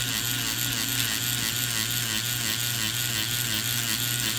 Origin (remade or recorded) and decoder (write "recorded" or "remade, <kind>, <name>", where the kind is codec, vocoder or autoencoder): recorded